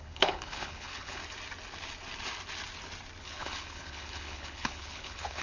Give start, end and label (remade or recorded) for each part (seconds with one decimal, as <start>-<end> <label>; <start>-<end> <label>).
0.0-1.2 remade; 1.2-3.2 recorded; 3.2-5.4 remade

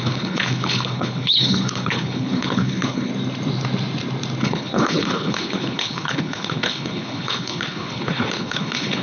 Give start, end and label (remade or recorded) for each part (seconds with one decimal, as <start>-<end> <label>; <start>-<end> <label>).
0.0-3.1 remade; 3.1-4.4 recorded; 4.4-9.0 remade